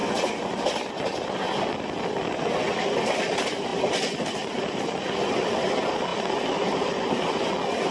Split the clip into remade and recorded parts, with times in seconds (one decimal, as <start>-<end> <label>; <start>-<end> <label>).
0.0-0.9 remade; 0.9-3.7 recorded; 3.7-5.0 remade; 5.0-6.1 recorded; 6.1-7.0 remade; 7.0-7.9 recorded